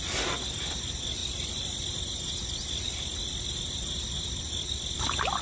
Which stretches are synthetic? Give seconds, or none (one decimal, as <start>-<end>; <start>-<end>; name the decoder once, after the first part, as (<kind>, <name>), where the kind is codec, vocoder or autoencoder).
none

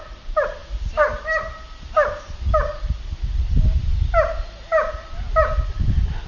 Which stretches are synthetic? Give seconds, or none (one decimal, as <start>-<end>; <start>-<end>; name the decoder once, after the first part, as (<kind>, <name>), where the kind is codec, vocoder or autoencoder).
none

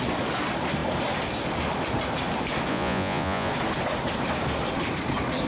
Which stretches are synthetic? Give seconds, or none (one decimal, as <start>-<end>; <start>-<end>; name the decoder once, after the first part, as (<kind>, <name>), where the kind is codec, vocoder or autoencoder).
2.7-3.5 (vocoder, Vocos)

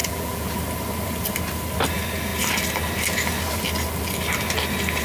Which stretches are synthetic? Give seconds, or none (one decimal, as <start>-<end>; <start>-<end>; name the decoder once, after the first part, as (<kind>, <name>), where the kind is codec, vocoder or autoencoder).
0.0-0.6 (vocoder, BigVGAN v2)

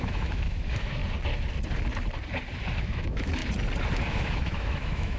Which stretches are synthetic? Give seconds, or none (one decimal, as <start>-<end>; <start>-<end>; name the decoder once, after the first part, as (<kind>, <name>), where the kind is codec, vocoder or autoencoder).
0.0-1.0 (autoencoder, DAC-VAE); 2.8-3.4; 4.1-5.2